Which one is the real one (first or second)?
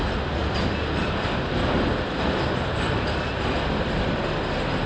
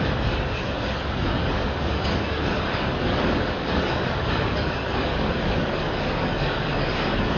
first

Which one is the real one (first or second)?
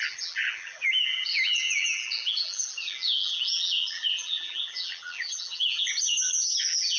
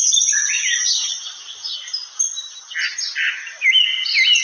second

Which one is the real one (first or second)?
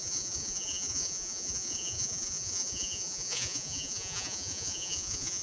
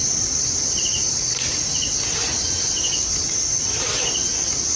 second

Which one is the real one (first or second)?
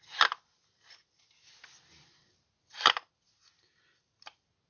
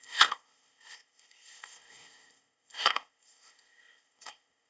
first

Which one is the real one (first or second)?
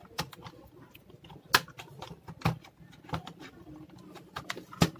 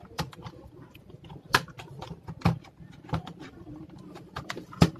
first